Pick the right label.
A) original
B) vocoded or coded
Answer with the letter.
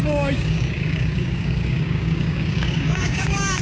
B